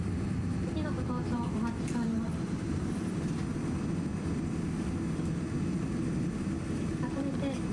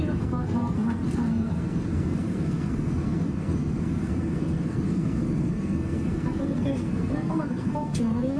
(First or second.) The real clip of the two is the first